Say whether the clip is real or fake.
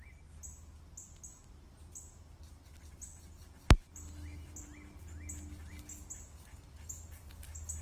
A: real